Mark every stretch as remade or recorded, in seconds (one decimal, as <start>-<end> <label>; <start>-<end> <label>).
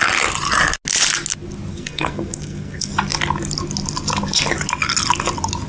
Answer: 0.0-1.7 recorded; 1.7-2.9 remade; 2.9-5.7 recorded